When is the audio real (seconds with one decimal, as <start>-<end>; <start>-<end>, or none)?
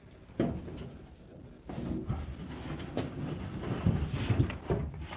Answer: 0.0-5.2